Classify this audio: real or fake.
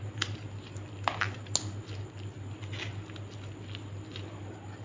real